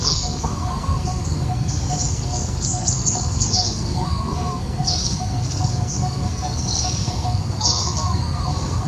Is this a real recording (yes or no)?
no